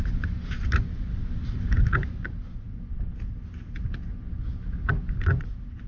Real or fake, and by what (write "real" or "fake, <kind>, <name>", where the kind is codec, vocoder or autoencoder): real